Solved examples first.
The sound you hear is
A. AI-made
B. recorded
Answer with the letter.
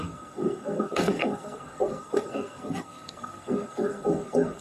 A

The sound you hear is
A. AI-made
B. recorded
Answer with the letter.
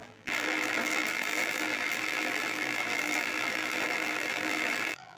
A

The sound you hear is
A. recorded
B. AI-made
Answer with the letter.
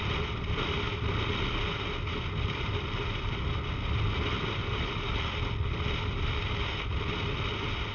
A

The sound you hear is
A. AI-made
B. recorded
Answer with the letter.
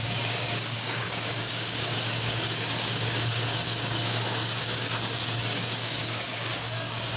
A